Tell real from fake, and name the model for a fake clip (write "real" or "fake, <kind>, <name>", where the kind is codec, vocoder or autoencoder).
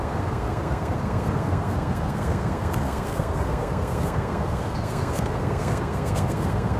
fake, codec, SNAC